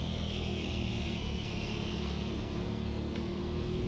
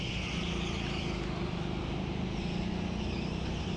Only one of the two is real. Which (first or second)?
second